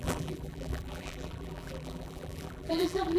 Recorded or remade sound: remade